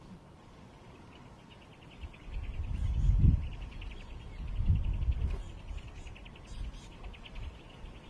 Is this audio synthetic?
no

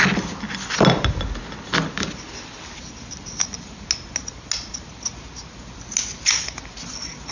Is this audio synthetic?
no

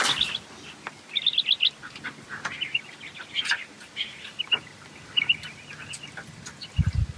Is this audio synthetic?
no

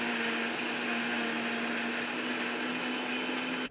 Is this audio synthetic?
no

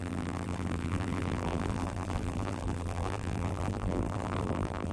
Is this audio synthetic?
yes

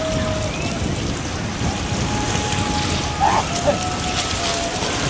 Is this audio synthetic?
no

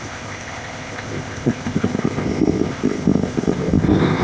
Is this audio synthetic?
yes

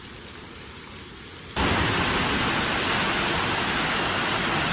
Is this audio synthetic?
no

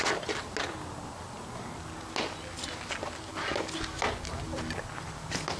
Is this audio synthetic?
no